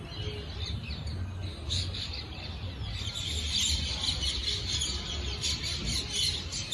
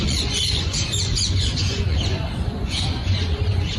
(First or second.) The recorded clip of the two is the first